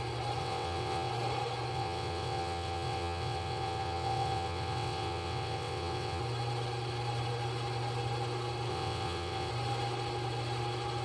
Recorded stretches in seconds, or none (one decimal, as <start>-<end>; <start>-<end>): 0.0-0.4; 1.1-1.7; 6.2-8.7; 9.5-11.0